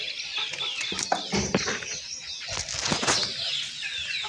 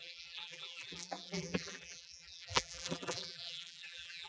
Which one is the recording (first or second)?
first